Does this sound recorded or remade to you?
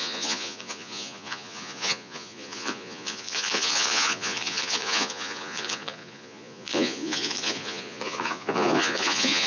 remade